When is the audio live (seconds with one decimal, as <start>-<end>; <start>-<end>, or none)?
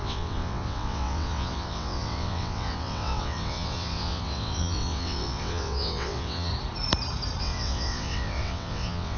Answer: 6.5-7.4